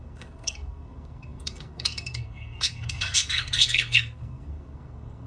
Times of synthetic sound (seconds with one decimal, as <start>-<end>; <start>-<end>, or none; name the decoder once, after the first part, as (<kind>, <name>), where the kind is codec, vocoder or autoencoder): 0.0-5.3 (codec, SNAC)